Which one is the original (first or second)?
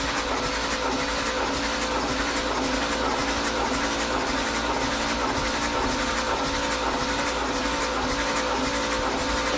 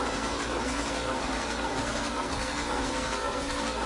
first